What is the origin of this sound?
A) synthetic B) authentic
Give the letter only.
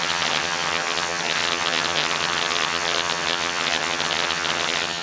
A